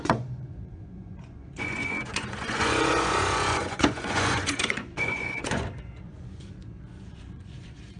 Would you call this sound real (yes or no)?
no